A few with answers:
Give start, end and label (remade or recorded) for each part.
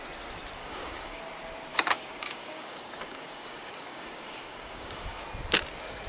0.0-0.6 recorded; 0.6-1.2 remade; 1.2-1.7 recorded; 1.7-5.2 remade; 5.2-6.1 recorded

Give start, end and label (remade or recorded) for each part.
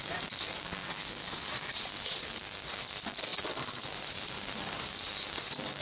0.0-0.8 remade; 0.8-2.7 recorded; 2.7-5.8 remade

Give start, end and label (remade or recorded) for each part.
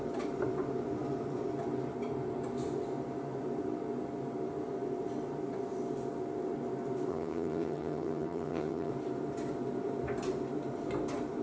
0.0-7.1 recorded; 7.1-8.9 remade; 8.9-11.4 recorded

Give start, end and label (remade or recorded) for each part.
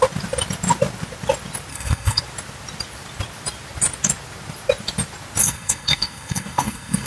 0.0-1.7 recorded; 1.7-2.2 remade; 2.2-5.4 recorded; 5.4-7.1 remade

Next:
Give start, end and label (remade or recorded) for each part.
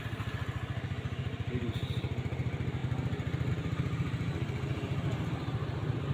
0.0-6.1 recorded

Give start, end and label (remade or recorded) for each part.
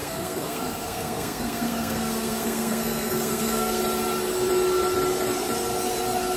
0.0-3.8 remade; 3.8-6.4 recorded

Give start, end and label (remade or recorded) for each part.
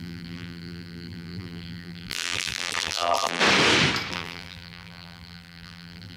0.0-3.4 remade; 3.4-4.1 recorded; 4.1-6.2 remade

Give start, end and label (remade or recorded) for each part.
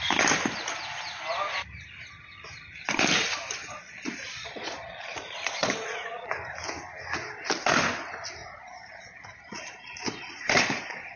0.0-3.6 recorded; 3.6-6.3 remade; 6.3-8.4 recorded; 8.4-11.2 remade